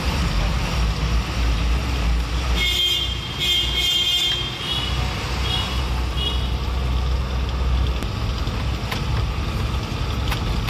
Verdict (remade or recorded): recorded